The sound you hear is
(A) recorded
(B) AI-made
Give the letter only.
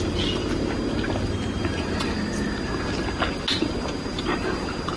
A